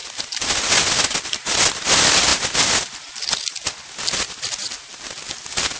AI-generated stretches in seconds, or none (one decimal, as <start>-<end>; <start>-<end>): none